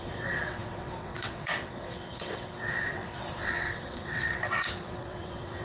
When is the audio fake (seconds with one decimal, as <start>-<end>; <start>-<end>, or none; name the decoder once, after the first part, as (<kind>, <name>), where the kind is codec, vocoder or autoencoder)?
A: 0.0-5.6 (vocoder, WaveNeXt)